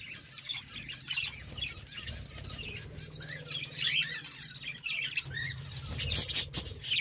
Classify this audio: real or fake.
real